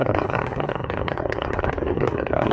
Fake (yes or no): yes